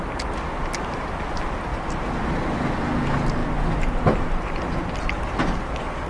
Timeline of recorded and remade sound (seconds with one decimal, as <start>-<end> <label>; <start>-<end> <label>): 0.0-6.1 recorded

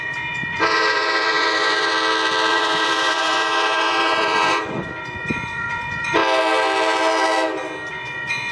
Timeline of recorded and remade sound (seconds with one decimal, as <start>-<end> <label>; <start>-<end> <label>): 0.0-1.9 remade; 1.9-2.5 recorded; 2.5-6.2 remade; 6.2-7.9 recorded; 7.9-8.5 remade

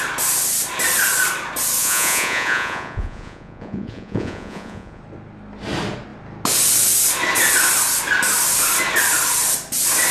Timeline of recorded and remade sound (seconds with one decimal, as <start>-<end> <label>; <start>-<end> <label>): 0.0-1.8 recorded; 1.8-5.0 remade; 5.0-10.1 recorded

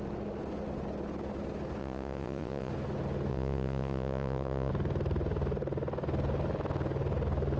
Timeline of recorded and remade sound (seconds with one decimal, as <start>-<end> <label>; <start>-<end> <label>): 0.0-1.8 recorded; 1.8-2.7 remade; 2.7-3.3 recorded; 3.3-4.7 remade; 4.7-7.6 recorded

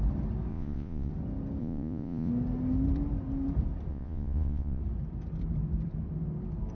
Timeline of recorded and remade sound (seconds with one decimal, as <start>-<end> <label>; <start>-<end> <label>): 0.0-0.5 recorded; 0.5-1.1 remade; 1.1-1.6 recorded; 1.6-2.3 remade; 2.3-3.9 recorded; 3.9-4.8 remade; 4.8-6.7 recorded

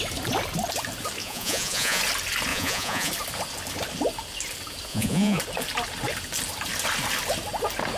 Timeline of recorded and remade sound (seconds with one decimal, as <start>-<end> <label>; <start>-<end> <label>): 0.0-1.2 recorded; 1.2-2.0 remade; 2.0-2.5 recorded; 2.5-3.1 remade; 3.1-4.9 recorded; 4.9-5.4 remade; 5.4-8.0 recorded

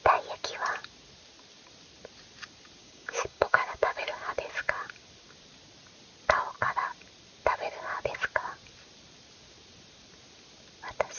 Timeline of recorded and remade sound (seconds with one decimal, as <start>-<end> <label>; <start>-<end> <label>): 0.0-2.8 recorded; 2.8-4.0 remade; 4.0-11.2 recorded